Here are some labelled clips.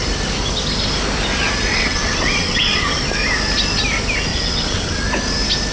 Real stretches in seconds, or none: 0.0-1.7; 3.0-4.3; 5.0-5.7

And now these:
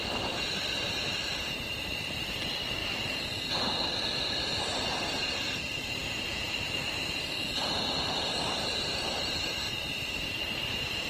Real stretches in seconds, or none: 2.8-4.3

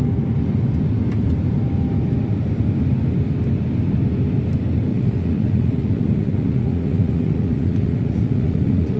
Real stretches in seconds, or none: 0.0-4.9

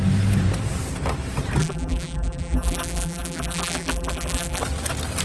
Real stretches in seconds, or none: 0.0-1.6; 4.6-5.2

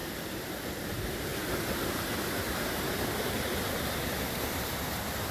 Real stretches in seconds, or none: 0.0-5.3

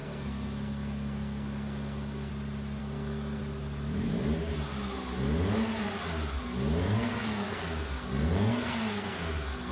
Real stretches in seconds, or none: 2.3-2.8; 3.4-6.8